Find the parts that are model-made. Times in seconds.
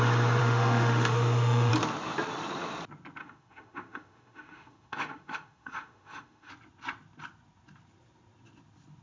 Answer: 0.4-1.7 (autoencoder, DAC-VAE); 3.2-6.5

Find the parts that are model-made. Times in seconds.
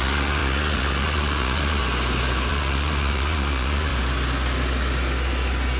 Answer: 0.0-1.8 (vocoder, Vocos); 2.5-3.9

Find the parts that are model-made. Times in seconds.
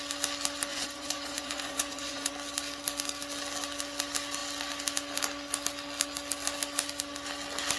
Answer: 0.7-2.3 (vocoder, Vocos)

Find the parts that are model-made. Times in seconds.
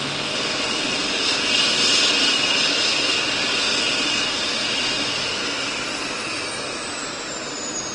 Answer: 2.3-3.1 (autoencoder, DAC-VAE); 4.5-5.1; 6.3-7.3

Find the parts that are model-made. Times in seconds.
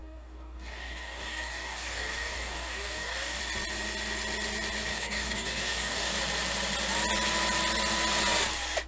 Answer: 0.0-3.4 (codec, DAC); 4.9-6.2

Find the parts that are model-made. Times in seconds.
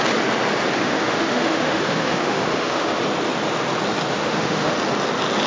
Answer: 0.8-3.0 (autoencoder, DAC-VAE); 4.1-4.7